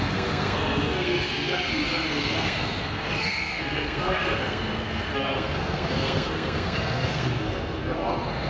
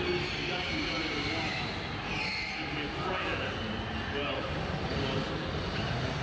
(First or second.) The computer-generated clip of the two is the first